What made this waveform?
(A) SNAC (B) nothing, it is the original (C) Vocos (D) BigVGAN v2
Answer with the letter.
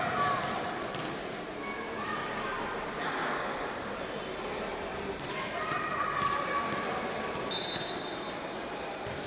B